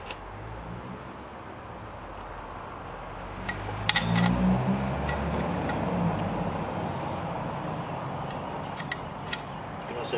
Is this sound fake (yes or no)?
no